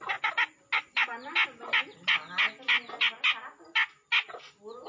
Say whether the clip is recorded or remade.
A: recorded